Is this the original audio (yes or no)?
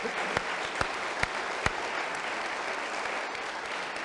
yes